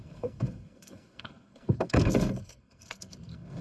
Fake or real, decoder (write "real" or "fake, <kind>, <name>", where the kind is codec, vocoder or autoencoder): fake, codec, SNAC